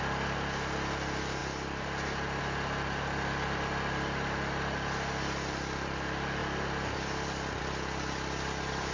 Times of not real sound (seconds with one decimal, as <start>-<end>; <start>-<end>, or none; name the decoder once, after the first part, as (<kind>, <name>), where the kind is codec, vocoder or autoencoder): none